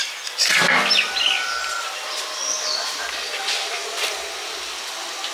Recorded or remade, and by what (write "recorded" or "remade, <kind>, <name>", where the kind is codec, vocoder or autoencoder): recorded